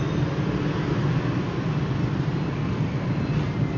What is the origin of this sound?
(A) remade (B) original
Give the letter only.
B